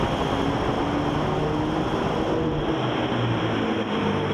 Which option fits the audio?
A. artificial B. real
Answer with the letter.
B